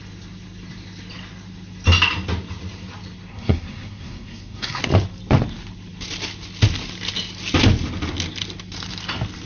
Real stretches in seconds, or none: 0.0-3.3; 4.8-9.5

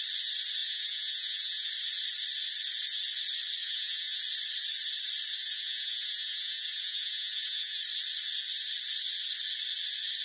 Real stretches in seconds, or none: 0.0-0.6; 1.7-3.6; 4.2-5.4; 7.8-10.2